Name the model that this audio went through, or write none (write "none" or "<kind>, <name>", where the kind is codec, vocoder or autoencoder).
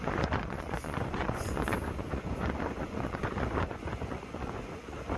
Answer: vocoder, Vocos